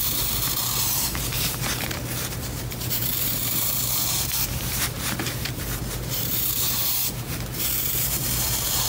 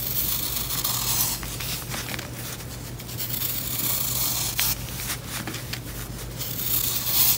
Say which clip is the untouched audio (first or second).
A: second